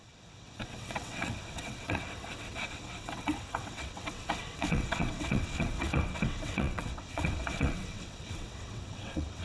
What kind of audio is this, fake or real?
fake